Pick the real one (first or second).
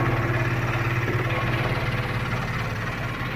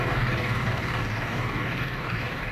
first